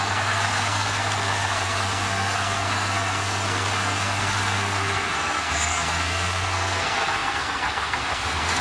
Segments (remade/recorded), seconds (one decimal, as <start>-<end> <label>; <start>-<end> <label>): 0.0-8.6 remade